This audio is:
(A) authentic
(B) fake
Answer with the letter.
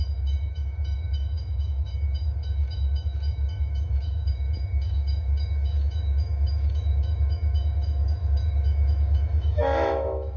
B